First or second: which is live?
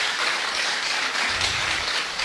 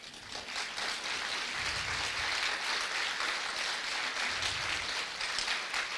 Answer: second